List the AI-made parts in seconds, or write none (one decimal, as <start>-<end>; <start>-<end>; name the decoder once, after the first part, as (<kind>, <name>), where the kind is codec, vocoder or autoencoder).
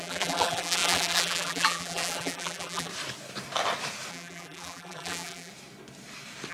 0.0-2.9 (vocoder, BigVGAN v2); 4.1-5.5